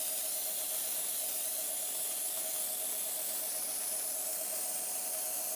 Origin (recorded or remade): recorded